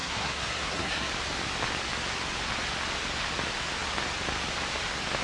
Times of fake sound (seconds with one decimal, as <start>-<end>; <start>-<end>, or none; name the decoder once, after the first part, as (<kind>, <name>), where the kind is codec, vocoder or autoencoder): 0.0-1.1 (codec, SNAC)